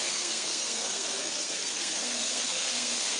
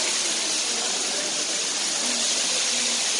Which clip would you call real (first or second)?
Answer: second